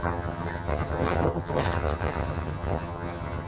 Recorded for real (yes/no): no